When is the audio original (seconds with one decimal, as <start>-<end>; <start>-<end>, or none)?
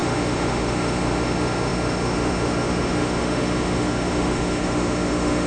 none